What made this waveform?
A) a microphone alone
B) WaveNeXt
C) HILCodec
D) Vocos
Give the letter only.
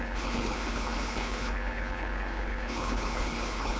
C